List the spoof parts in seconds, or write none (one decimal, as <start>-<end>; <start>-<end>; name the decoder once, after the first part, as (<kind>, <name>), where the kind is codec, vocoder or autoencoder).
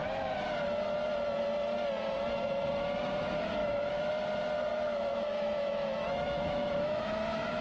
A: 3.6-4.1 (autoencoder, DAC-VAE); 4.7-7.6